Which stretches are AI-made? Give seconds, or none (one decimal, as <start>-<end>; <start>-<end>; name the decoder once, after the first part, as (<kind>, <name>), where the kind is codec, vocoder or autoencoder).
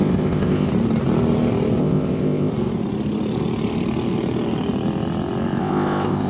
0.0-0.7 (codec, ZipCodec); 1.8-2.5; 5.6-6.3